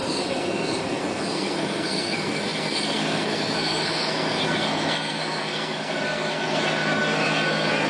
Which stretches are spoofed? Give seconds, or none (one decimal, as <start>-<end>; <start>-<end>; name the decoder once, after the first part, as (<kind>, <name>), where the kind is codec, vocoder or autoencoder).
0.0-7.9 (codec, SNAC)